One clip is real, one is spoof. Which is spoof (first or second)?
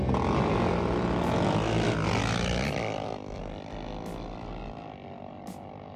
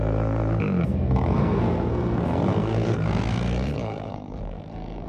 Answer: second